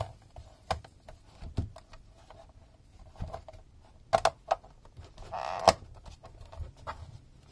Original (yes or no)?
yes